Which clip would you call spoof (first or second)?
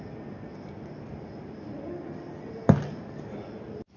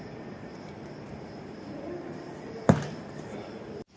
second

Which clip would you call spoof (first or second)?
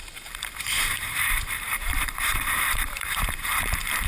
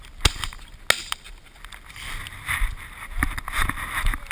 first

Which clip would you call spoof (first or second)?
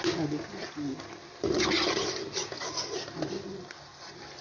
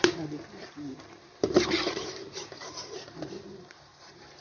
second